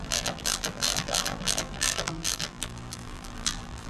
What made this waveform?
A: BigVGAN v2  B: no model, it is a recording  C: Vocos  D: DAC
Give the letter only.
A